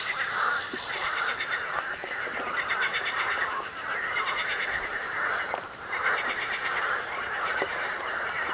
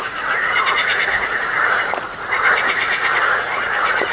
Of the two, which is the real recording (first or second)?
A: first